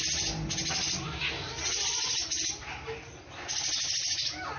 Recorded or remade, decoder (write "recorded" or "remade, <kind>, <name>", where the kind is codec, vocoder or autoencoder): recorded